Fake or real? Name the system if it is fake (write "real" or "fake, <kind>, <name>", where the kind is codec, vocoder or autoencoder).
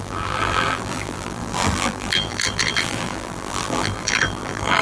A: fake, vocoder, BigVGAN v2